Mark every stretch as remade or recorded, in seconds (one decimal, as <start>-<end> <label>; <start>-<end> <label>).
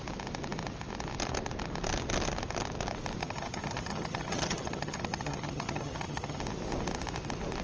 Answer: 0.0-3.2 recorded; 3.2-6.4 remade; 6.4-7.6 recorded